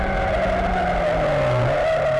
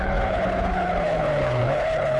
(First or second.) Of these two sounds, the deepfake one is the second